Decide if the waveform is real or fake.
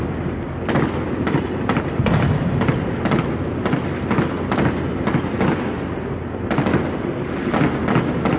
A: real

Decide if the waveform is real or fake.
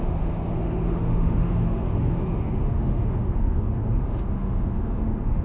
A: fake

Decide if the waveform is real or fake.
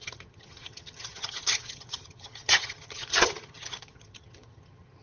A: fake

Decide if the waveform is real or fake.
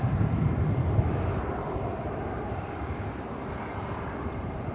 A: fake